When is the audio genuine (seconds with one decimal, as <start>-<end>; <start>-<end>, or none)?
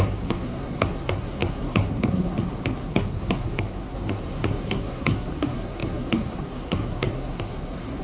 none